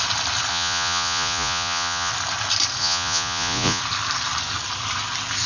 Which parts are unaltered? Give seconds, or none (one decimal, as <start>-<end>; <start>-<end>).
0.0-0.5; 2.1-2.8; 3.8-5.5